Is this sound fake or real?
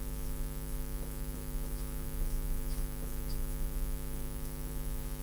fake